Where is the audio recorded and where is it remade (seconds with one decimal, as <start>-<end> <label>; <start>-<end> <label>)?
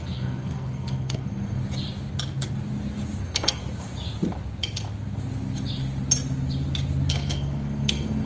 0.0-1.6 remade; 1.6-3.2 recorded; 3.2-3.6 remade; 3.6-7.1 recorded; 7.1-8.3 remade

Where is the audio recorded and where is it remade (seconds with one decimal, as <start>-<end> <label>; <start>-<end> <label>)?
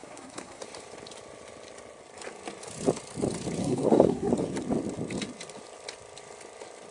0.0-0.6 remade; 0.6-3.6 recorded; 3.6-4.3 remade; 4.3-6.9 recorded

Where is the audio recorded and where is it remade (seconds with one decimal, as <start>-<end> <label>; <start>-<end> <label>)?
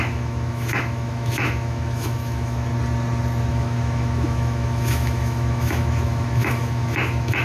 0.0-2.7 remade; 2.7-3.5 recorded; 3.5-7.4 remade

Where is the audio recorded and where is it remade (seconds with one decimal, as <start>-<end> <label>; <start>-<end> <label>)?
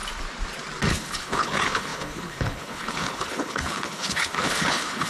0.0-0.9 recorded; 0.9-5.1 remade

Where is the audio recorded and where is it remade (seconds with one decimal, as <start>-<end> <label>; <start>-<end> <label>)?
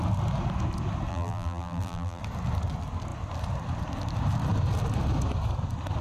0.0-1.1 recorded; 1.1-2.2 remade; 2.2-6.0 recorded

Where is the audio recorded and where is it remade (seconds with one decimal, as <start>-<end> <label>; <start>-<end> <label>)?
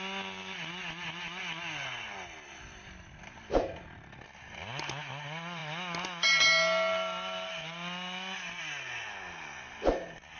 0.0-10.4 recorded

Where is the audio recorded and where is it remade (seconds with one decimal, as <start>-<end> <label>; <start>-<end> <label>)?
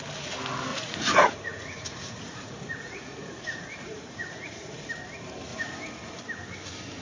0.0-0.7 recorded; 0.7-4.9 remade; 4.9-5.5 recorded; 5.5-6.2 remade; 6.2-7.0 recorded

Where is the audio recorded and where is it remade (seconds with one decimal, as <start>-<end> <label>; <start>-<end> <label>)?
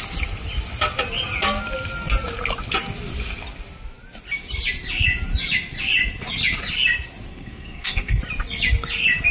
0.0-7.3 recorded; 7.3-8.2 remade; 8.2-9.3 recorded